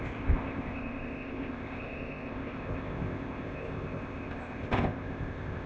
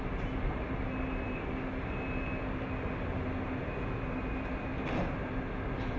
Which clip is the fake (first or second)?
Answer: first